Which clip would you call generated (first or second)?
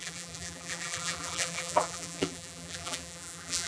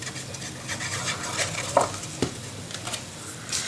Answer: first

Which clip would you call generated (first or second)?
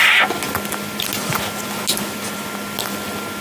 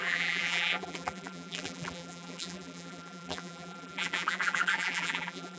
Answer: second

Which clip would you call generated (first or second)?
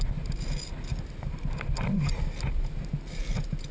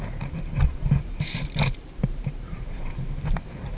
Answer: second